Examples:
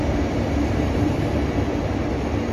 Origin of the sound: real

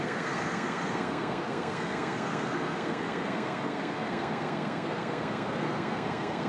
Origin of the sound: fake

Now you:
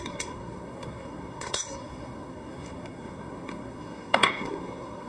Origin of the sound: fake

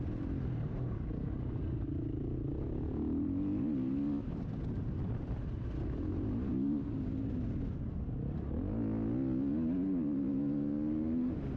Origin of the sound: real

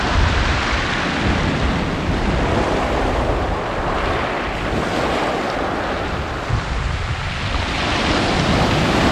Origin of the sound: real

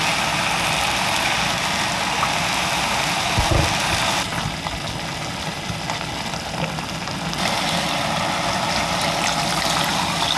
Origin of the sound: real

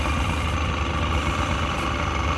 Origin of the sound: real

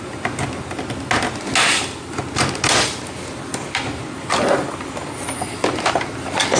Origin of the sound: real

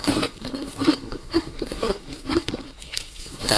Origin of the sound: fake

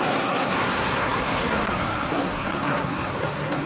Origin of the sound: fake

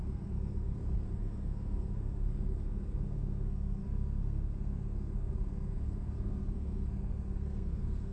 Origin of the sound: fake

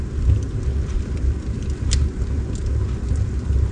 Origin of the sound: real